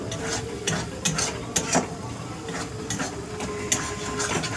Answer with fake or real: real